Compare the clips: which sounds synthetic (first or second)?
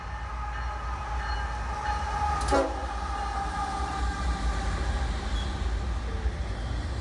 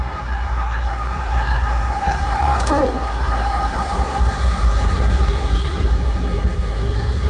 second